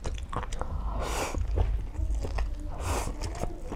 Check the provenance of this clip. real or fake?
real